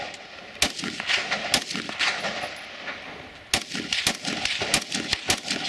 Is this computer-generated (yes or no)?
no